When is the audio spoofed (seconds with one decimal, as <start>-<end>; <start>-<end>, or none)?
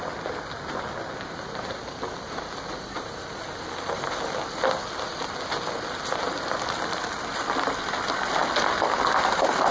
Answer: none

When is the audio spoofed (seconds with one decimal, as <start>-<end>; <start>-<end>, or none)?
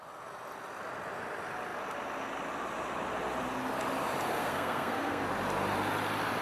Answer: 4.4-5.2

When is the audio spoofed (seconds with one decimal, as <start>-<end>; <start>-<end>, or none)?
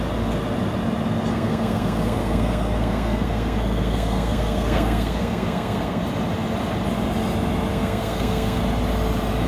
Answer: 1.3-6.0; 7.7-8.6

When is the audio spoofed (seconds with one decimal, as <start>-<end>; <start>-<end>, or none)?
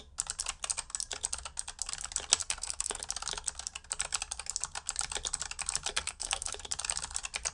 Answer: 2.4-3.0; 5.9-6.7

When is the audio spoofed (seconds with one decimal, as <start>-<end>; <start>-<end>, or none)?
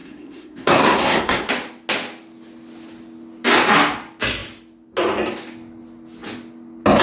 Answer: 0.0-1.5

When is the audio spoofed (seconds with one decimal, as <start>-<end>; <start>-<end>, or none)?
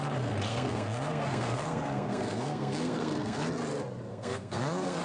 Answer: 0.5-3.5; 4.1-5.0